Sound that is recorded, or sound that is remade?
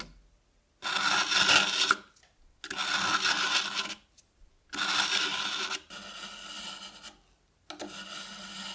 recorded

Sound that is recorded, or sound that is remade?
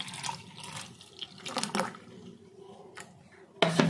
recorded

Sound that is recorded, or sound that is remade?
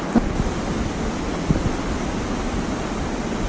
recorded